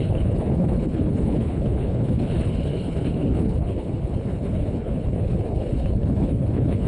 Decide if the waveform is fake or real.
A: fake